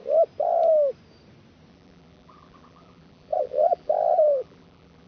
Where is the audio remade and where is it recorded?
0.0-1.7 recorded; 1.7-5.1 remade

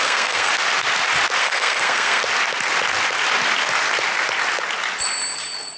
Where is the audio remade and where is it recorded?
0.0-0.5 remade; 0.5-1.4 recorded; 1.4-2.2 remade; 2.2-5.8 recorded

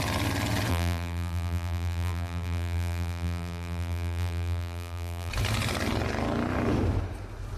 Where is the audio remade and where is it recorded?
0.0-0.7 recorded; 0.7-5.3 remade; 5.3-7.6 recorded

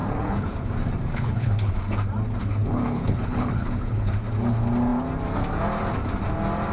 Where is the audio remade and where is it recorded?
0.0-0.7 remade; 0.7-1.1 recorded; 1.1-1.7 remade; 1.7-2.4 recorded; 2.4-4.1 remade; 4.1-6.7 recorded

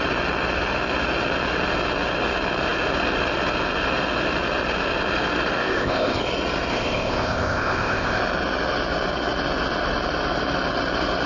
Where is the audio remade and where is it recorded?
0.0-5.6 recorded; 5.6-6.2 remade; 6.2-6.7 recorded; 6.7-8.2 remade; 8.2-11.3 recorded

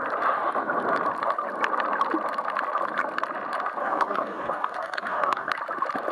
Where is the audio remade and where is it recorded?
0.0-3.8 recorded; 3.8-5.5 remade; 5.5-6.1 recorded

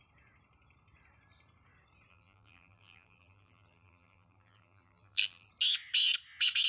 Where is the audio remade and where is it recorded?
0.0-2.1 recorded; 2.1-5.5 remade; 5.5-6.7 recorded

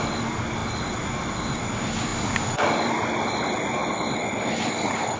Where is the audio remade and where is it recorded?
0.0-5.2 recorded